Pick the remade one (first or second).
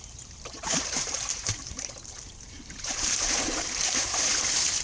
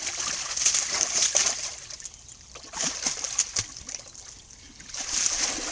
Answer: first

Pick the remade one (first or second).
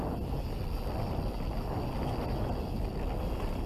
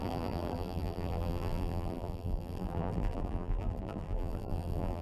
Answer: second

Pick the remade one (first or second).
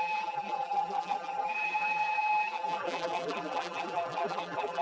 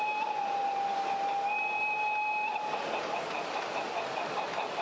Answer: first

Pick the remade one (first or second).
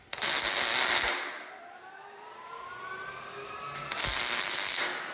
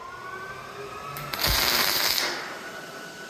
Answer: second